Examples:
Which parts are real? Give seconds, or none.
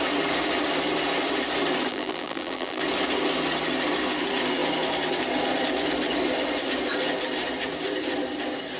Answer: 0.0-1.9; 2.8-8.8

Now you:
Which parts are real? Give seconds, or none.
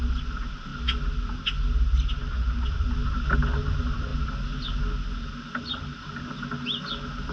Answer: 0.0-7.3